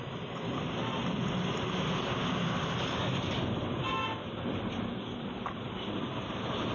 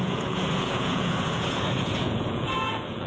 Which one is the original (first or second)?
first